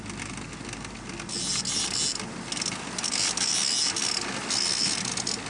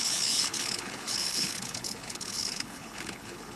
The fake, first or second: second